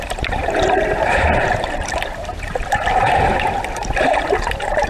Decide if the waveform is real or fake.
fake